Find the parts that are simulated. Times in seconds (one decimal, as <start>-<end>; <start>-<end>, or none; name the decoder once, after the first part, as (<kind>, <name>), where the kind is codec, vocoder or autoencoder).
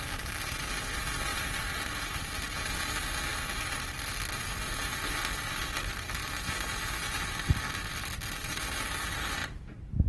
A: 1.3-2.2 (vocoder, BigVGAN v2); 9.4-10.1